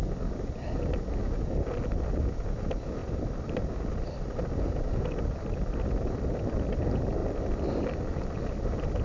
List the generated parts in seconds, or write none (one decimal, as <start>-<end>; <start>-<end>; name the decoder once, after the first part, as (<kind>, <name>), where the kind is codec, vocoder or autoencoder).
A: 3.0-6.8 (vocoder, BigVGAN v2); 7.2-8.4